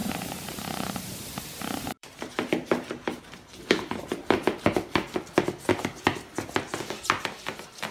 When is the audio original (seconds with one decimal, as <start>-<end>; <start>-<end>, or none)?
4.6-7.9